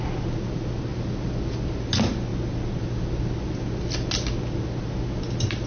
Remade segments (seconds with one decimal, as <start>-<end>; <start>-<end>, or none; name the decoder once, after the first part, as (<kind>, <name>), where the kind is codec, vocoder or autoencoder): none